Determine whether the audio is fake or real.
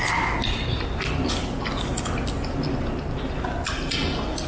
real